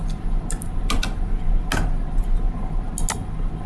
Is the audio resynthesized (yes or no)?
no